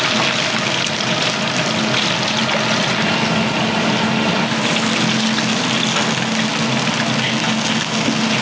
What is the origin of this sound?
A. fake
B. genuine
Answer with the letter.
B